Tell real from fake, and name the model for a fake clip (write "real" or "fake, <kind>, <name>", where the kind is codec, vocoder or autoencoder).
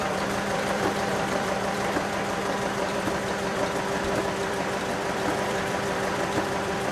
fake, vocoder, BigVGAN v2